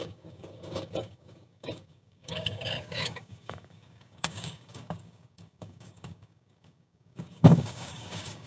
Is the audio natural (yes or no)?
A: no